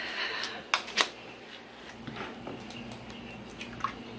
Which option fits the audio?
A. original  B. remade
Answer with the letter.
A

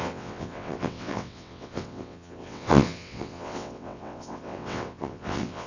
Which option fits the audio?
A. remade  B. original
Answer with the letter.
A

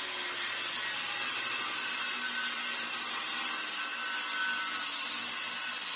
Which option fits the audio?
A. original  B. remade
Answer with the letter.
A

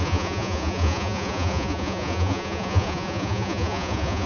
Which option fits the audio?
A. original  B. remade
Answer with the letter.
B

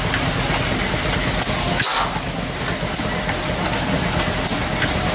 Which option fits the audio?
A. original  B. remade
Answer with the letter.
A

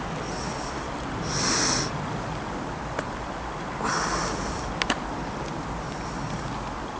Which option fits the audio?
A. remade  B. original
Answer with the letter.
B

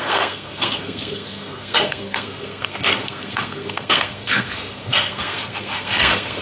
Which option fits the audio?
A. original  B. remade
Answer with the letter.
B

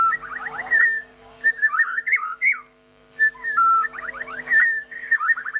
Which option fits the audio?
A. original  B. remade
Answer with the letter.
B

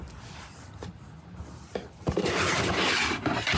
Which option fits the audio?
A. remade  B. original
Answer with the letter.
B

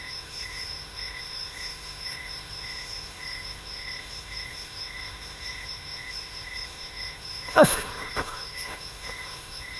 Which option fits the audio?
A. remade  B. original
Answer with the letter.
A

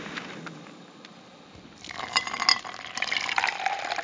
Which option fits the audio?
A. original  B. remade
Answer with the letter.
A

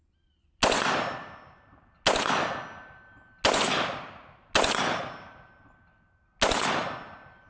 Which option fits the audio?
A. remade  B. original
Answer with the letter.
B